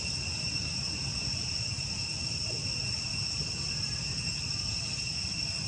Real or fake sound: real